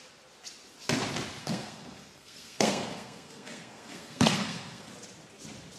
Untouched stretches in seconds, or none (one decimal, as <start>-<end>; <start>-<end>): 0.0-1.4; 4.9-5.8